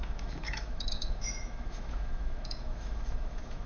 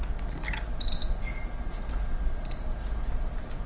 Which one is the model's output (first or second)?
first